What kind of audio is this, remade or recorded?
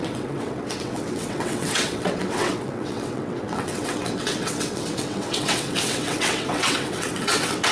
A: remade